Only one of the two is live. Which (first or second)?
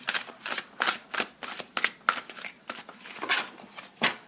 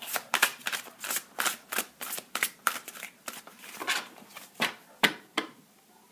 first